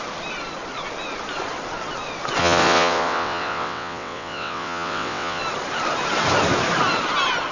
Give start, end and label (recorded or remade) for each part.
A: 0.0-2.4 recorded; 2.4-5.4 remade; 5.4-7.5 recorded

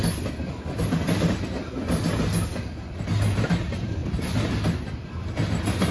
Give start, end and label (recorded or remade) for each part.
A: 0.0-5.9 recorded

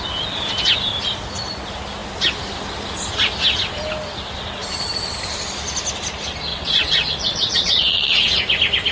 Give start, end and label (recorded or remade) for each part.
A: 0.0-6.5 recorded; 6.5-8.4 remade; 8.4-8.9 recorded

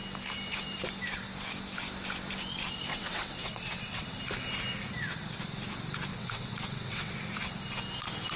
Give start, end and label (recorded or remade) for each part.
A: 0.0-2.9 recorded; 2.9-4.2 remade; 4.2-6.1 recorded; 6.1-7.1 remade; 7.1-8.4 recorded

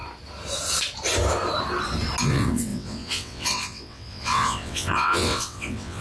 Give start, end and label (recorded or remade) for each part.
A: 0.0-2.2 recorded; 2.2-6.0 remade

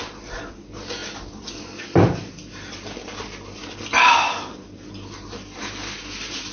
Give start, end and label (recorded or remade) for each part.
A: 0.0-6.5 recorded

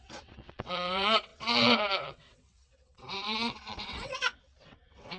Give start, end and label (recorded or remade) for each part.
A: 0.0-5.2 remade